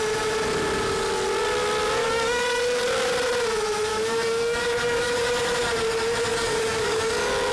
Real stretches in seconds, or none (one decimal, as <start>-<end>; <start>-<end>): 0.0-2.0; 2.6-3.9; 5.3-6.3; 7.0-7.5